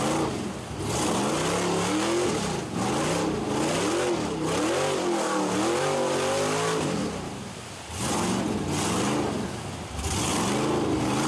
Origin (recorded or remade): recorded